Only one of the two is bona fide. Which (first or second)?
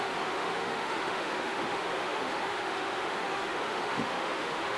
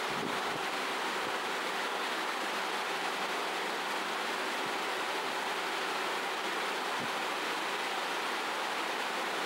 second